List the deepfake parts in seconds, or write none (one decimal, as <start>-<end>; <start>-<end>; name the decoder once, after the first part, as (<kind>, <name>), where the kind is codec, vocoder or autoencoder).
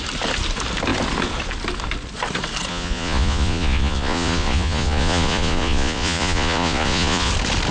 2.7-7.3 (vocoder, Vocos)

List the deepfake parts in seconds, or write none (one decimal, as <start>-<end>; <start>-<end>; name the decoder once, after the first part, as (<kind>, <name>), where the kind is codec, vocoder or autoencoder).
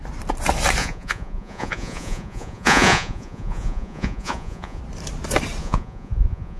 0.8-4.8 (vocoder, Vocos); 5.6-6.6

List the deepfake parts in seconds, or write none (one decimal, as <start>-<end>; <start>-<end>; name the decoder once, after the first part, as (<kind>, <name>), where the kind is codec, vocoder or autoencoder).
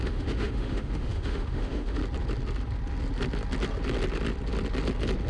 0.0-2.0 (autoencoder, DAC-VAE)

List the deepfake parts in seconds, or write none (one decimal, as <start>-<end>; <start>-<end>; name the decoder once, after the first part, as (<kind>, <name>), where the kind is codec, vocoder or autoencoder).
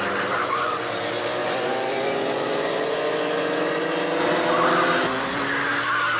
0.4-0.9 (vocoder, Vocos); 1.4-3.8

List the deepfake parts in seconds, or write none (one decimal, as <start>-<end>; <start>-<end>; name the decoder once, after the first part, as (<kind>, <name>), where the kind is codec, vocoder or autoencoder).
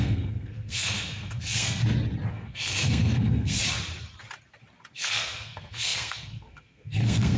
0.0-1.8 (codec, SNAC); 2.3-3.6; 4.9-7.4